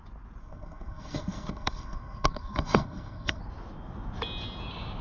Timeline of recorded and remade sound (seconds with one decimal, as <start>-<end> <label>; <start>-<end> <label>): 0.0-0.4 recorded; 0.4-3.4 remade; 3.4-5.0 recorded